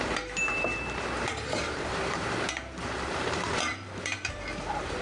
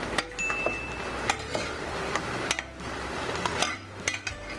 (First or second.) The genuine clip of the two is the second